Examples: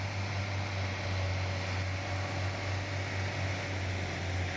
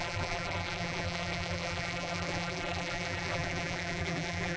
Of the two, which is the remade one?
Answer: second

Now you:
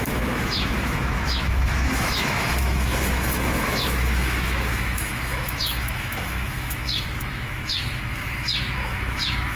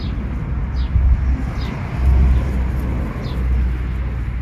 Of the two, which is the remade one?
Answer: first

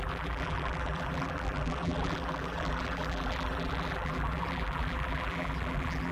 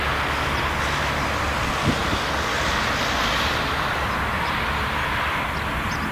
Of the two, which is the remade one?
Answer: first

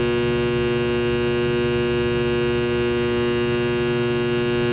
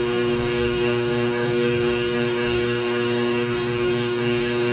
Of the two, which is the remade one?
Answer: second